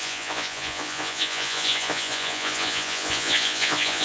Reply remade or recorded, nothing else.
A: remade